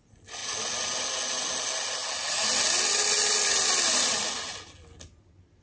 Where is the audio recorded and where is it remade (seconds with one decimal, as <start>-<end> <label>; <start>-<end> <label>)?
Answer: 0.0-5.6 recorded